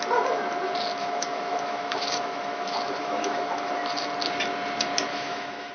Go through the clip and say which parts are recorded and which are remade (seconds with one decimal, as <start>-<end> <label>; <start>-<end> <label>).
0.0-1.0 recorded; 1.0-3.7 remade; 3.7-5.1 recorded; 5.1-5.7 remade